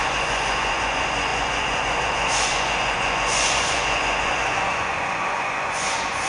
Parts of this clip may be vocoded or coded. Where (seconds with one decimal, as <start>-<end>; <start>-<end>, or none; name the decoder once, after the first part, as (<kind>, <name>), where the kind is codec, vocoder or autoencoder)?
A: 0.0-6.3 (vocoder, Vocos)